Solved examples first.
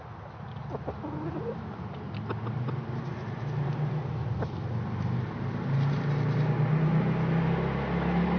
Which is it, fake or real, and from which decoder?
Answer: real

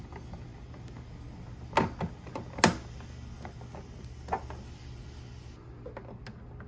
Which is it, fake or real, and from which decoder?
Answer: real